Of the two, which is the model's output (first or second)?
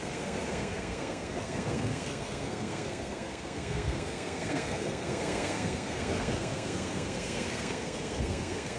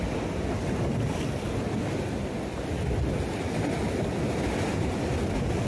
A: first